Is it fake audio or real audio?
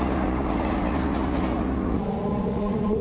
fake